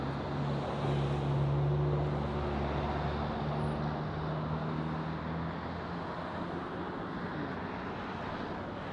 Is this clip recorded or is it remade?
recorded